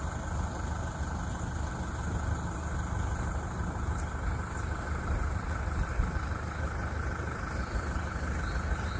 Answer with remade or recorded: recorded